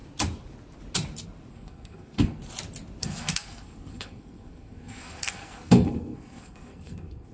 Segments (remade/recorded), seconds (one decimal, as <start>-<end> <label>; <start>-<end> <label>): 0.0-1.5 recorded; 1.5-2.4 remade; 2.4-3.0 recorded; 3.0-7.3 remade